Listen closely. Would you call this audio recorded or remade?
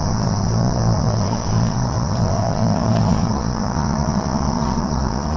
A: remade